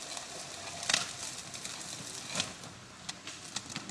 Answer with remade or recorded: recorded